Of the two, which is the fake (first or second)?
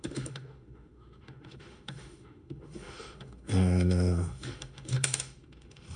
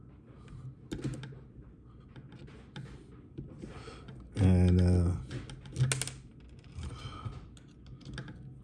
first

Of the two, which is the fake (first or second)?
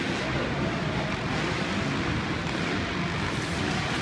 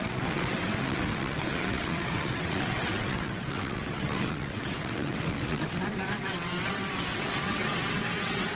second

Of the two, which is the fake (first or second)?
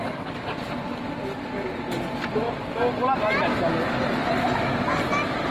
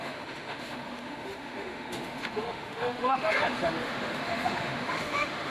second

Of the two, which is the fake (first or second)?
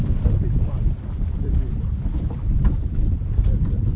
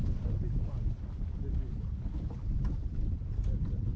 first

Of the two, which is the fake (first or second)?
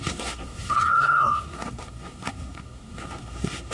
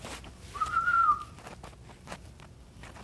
first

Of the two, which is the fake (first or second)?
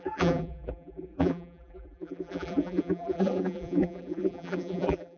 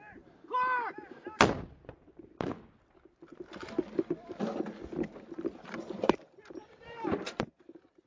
first